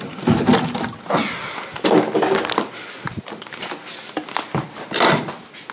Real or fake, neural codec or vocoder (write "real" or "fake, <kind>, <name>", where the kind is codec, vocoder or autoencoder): real